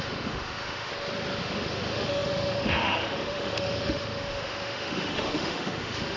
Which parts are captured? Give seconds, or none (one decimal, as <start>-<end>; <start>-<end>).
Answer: 0.9-1.4